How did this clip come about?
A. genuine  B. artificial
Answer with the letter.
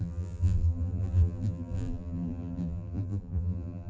B